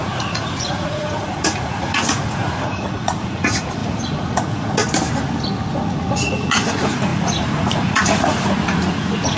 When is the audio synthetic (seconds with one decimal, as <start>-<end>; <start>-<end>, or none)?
0.0-4.8; 5.7-9.4